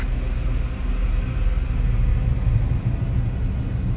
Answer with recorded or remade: recorded